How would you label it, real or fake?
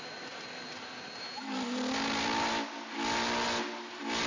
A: real